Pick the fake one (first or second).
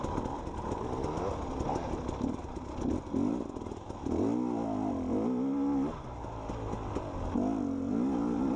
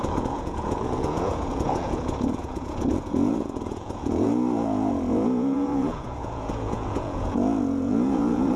second